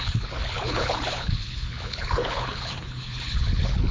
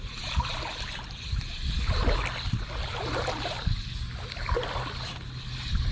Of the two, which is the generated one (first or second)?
first